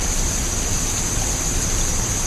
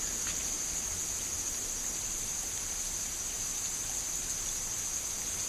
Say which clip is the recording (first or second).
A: second